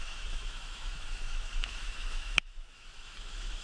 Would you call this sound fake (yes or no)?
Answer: yes